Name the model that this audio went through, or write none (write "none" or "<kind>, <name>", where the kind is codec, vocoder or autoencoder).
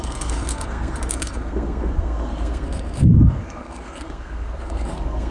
codec, SNAC